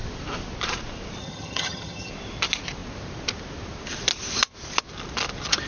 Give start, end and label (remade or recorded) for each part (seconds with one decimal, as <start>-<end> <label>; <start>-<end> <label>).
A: 0.0-1.2 recorded; 1.2-2.1 remade; 2.1-5.7 recorded